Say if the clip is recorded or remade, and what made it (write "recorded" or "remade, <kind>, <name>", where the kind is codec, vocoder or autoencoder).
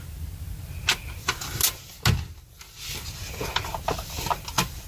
recorded